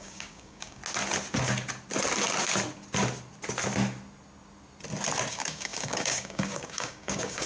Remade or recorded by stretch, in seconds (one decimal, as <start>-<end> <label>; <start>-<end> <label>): 0.0-0.8 remade; 0.8-5.3 recorded; 5.3-7.5 remade